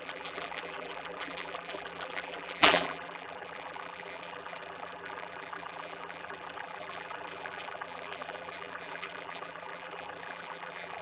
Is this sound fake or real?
fake